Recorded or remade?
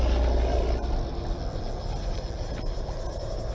recorded